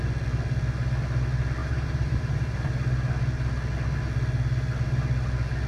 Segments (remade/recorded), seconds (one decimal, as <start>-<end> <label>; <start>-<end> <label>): 0.0-1.6 recorded; 1.6-2.7 remade; 2.7-5.7 recorded